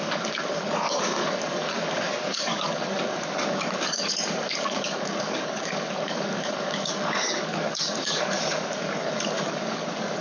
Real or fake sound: fake